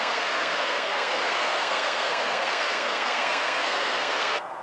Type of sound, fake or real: fake